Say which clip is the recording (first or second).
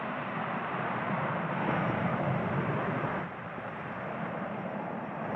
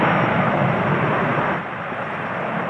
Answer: second